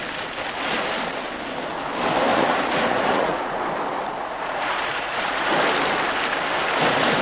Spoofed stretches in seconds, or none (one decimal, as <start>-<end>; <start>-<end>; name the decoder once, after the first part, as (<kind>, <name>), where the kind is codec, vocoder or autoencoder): 2.3-3.6 (vocoder, Vocos); 4.2-5.5

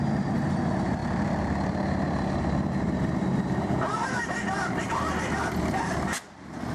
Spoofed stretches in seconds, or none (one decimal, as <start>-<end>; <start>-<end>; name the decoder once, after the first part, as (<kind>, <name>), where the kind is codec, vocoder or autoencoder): none

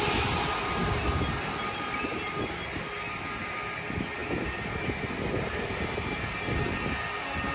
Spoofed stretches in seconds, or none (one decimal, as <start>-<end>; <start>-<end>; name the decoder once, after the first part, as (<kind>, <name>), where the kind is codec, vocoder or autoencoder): none

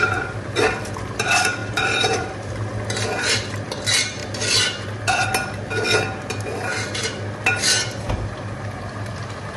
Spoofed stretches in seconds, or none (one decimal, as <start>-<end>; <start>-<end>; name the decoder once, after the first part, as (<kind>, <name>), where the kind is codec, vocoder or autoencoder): 0.0-4.2 (vocoder, BigVGAN v2); 8.1-9.6

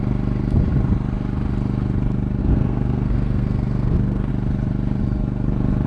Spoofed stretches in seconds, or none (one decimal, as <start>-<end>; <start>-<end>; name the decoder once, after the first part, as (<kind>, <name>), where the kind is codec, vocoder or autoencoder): 2.4-4.3 (codec, SNAC)

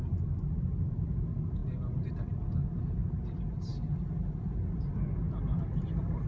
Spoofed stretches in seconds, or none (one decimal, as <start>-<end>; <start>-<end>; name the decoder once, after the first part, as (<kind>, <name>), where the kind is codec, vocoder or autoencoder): none

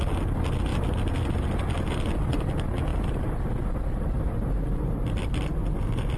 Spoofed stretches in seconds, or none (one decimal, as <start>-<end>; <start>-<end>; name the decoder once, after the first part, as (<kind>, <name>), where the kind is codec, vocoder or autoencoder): none